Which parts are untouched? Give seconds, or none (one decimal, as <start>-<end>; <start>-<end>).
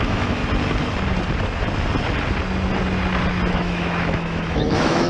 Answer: 0.4-3.5